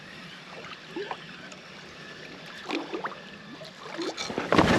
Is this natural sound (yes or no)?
yes